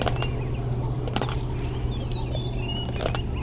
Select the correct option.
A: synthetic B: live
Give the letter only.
B